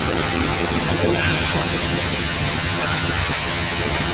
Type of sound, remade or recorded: remade